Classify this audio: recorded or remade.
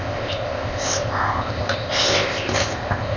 remade